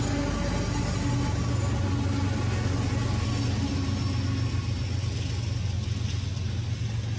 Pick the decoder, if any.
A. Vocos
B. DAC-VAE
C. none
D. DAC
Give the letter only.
C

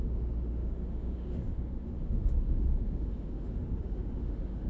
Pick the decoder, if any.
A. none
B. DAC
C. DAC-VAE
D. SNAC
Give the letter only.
C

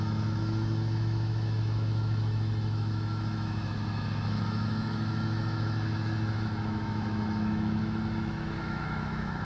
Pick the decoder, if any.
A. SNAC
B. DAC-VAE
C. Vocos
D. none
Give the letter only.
B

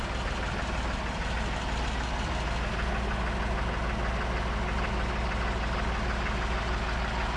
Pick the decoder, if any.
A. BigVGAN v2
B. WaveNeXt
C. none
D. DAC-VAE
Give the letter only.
C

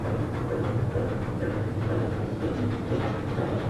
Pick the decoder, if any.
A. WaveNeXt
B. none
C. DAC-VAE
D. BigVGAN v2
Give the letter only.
B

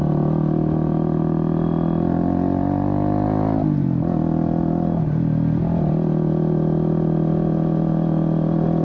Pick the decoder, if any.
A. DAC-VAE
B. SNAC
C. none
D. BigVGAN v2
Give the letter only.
C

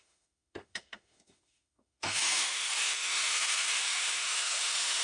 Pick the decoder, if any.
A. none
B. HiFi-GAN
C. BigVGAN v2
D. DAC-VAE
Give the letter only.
D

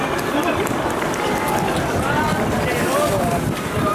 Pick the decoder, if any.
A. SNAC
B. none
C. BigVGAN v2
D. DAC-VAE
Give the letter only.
B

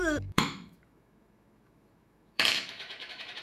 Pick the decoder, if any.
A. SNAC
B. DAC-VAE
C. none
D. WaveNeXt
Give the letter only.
B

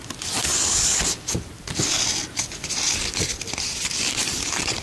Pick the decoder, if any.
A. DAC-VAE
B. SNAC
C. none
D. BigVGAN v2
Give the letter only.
C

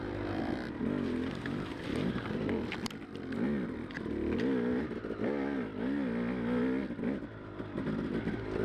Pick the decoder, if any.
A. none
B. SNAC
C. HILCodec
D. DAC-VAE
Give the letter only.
A